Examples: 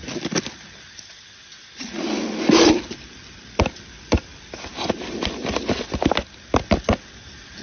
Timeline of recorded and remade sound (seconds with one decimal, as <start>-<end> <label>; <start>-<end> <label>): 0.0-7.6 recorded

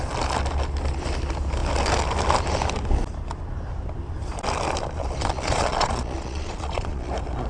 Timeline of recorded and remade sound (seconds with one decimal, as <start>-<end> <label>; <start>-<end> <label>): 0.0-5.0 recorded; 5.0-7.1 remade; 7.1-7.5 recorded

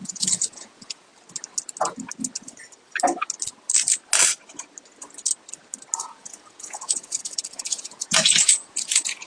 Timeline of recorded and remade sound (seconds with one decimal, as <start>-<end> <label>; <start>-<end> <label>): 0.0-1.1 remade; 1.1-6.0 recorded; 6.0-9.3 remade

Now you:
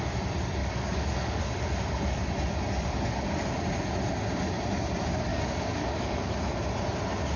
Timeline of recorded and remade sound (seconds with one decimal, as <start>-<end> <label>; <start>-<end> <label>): 0.0-0.6 recorded; 0.6-1.4 remade; 1.4-5.3 recorded; 5.3-6.3 remade; 6.3-7.4 recorded

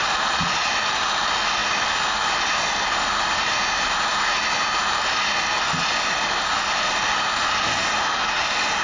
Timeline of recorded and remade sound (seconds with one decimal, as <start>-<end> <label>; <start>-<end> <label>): 0.0-0.7 remade; 0.7-8.8 recorded